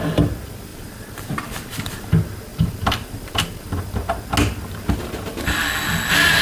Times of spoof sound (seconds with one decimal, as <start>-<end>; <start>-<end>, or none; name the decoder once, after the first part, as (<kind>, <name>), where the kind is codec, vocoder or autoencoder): 0.7-2.1 (vocoder, BigVGAN v2); 2.5-3.9